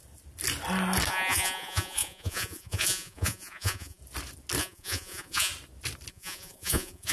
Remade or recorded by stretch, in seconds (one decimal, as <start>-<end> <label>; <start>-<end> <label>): 0.0-1.1 recorded; 1.1-4.0 remade; 4.0-4.6 recorded; 4.6-5.5 remade; 5.5-6.1 recorded; 6.1-7.1 remade